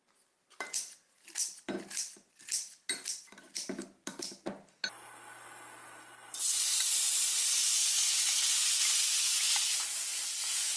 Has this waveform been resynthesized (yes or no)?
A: no